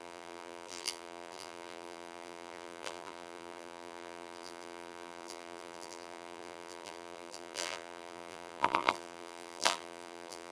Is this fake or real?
fake